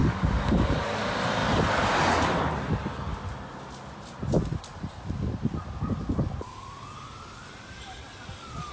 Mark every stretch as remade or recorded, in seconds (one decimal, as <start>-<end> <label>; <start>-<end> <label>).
0.0-0.8 remade; 0.8-8.7 recorded